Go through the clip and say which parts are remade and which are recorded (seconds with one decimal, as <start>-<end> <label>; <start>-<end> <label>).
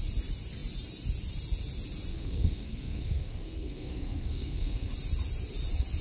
0.0-2.1 recorded; 2.1-4.9 remade; 4.9-6.0 recorded